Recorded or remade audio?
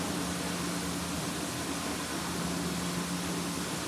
recorded